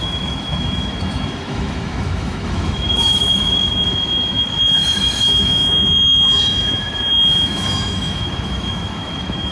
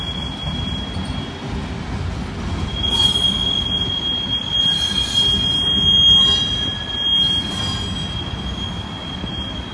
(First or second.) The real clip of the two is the second